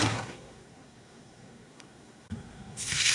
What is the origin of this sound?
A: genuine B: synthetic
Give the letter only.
B